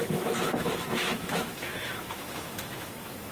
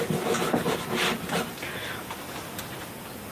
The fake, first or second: first